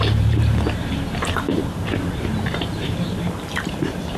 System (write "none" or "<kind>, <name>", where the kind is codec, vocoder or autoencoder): vocoder, BigVGAN v2